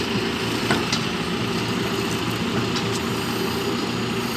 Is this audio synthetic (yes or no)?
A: no